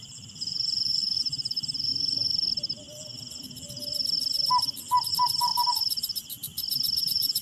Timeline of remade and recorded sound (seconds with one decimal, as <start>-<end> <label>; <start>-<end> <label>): 0.0-1.9 remade; 1.9-5.1 recorded; 5.1-5.5 remade; 5.5-7.0 recorded; 7.0-7.4 remade